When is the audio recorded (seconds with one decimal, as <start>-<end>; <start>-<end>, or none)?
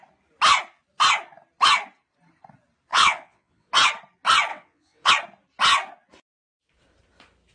0.0-2.9; 3.7-4.5; 5.1-7.5